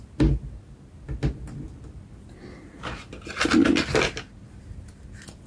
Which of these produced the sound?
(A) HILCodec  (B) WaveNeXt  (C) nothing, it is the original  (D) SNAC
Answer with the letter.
C